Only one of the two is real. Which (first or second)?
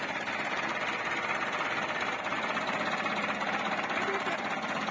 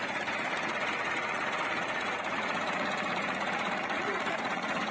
first